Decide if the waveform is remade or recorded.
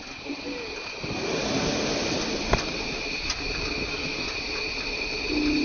recorded